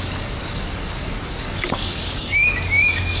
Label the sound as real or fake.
fake